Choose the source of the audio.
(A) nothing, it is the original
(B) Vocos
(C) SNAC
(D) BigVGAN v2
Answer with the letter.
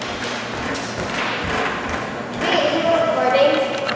A